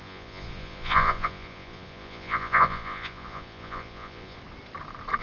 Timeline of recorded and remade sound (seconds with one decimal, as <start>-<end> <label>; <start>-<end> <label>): 0.0-4.4 remade; 4.4-5.2 recorded